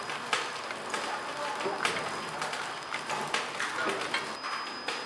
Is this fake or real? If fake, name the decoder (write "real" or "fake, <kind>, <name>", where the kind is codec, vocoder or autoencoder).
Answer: real